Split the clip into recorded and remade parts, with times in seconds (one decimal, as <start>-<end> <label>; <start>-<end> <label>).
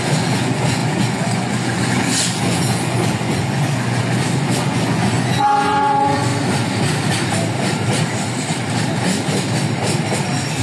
0.0-6.3 remade; 6.3-10.6 recorded